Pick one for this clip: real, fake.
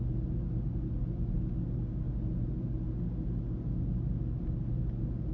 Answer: real